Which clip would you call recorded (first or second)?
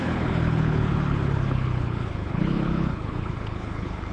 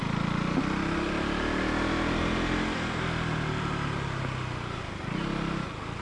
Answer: second